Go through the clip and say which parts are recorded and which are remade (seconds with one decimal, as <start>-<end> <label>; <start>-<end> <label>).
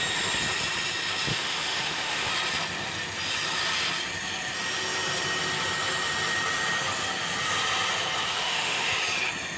0.0-1.3 recorded; 1.3-2.3 remade; 2.3-8.3 recorded; 8.3-8.9 remade; 8.9-9.6 recorded